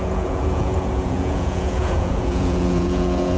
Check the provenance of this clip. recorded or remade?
remade